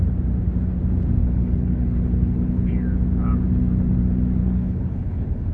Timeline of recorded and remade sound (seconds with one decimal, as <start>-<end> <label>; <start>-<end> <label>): 0.0-1.2 recorded; 1.2-2.7 remade; 2.7-4.4 recorded; 4.4-5.5 remade